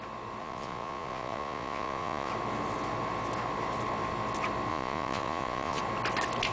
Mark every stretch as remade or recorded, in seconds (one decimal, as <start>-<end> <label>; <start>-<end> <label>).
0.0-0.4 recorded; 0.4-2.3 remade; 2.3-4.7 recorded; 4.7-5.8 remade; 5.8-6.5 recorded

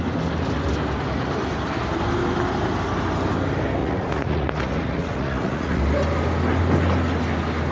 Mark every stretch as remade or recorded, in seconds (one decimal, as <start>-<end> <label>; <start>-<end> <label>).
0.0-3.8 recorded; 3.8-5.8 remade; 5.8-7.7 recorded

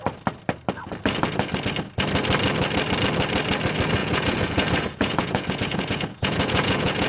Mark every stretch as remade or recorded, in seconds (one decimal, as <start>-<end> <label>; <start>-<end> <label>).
0.0-4.0 recorded; 4.0-7.1 remade

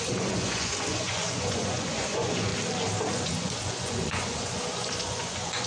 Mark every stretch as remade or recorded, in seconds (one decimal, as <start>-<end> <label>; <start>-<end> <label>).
0.0-2.5 remade; 2.5-3.1 recorded; 3.1-5.7 remade

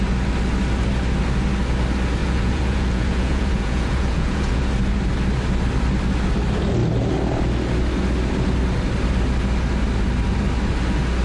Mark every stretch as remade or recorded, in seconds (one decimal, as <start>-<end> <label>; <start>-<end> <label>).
0.0-2.2 recorded; 2.2-4.7 remade; 4.7-11.2 recorded

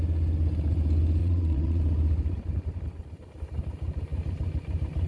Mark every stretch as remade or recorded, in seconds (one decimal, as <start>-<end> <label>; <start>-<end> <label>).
0.0-1.2 recorded; 1.2-1.8 remade; 1.8-5.1 recorded

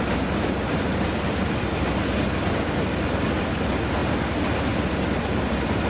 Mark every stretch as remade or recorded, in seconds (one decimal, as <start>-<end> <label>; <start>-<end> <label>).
0.0-5.9 recorded

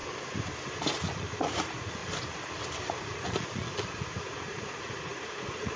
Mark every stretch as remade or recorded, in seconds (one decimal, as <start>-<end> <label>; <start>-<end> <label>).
0.0-0.8 recorded; 0.8-2.0 remade; 2.0-3.0 recorded; 3.0-5.8 remade